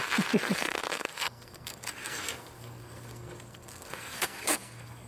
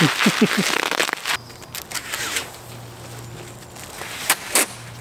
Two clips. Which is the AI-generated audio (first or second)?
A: first